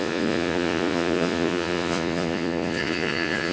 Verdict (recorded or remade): remade